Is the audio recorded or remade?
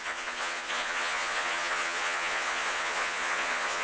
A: remade